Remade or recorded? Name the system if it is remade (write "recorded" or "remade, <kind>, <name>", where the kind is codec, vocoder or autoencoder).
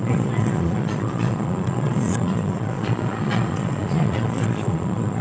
remade, vocoder, Vocos